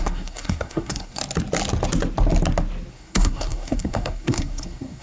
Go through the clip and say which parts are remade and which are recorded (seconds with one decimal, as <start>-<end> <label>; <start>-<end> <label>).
0.0-1.2 remade; 1.2-2.9 recorded; 2.9-5.0 remade